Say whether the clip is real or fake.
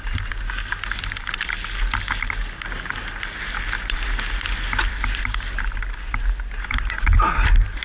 real